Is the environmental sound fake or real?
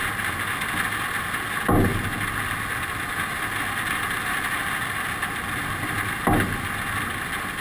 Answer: real